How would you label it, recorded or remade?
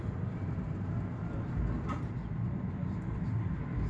recorded